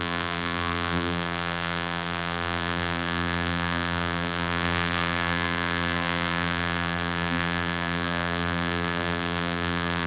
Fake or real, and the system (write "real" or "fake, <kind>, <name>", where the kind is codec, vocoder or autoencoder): fake, vocoder, BigVGAN v2